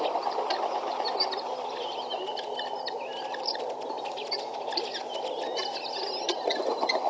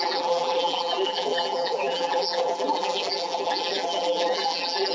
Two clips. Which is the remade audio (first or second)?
second